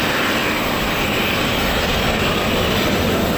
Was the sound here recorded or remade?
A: recorded